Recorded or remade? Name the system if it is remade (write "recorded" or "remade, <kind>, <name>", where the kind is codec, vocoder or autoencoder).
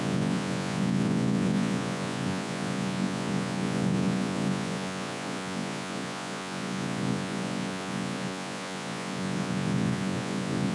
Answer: remade, vocoder, Vocos